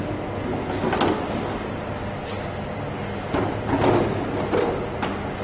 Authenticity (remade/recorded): recorded